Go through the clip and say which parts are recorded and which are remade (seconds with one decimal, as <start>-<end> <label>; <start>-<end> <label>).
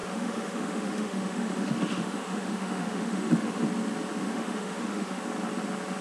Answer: 0.0-3.6 remade; 3.6-4.2 recorded; 4.2-5.2 remade; 5.2-6.0 recorded